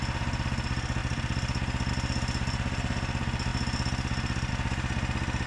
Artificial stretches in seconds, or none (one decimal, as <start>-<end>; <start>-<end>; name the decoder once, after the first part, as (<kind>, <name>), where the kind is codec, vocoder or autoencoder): 1.0-1.9 (vocoder, BigVGAN v2)